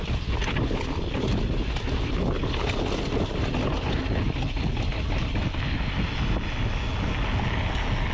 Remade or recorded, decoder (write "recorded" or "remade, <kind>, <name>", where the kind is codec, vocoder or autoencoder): recorded